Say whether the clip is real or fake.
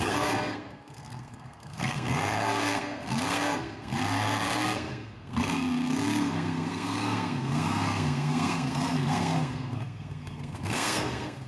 fake